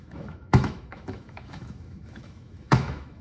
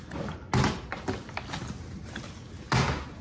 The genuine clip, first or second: second